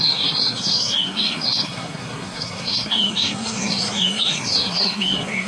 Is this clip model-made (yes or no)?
yes